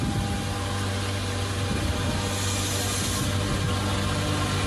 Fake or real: real